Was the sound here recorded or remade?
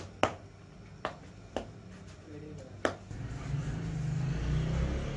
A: recorded